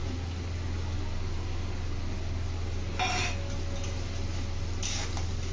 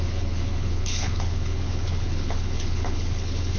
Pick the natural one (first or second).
first